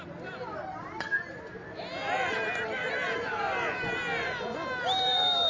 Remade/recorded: recorded